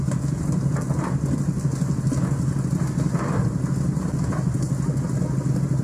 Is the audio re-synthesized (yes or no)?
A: no